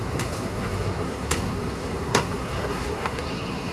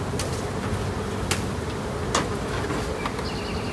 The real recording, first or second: second